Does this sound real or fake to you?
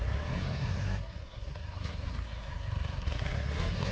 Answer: fake